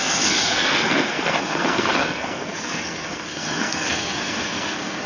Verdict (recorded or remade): remade